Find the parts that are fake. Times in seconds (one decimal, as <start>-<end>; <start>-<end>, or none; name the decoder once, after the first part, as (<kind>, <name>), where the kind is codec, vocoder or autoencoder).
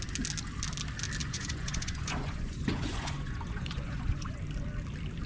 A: 1.2-4.4 (vocoder, Vocos)